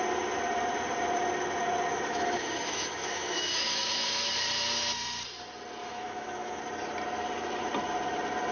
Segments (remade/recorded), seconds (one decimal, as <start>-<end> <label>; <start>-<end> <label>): 0.0-1.9 recorded; 1.9-4.3 remade; 4.3-5.8 recorded; 5.8-6.6 remade; 6.6-8.5 recorded